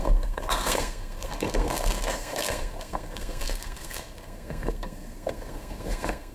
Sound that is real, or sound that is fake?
fake